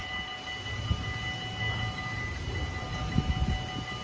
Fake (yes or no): no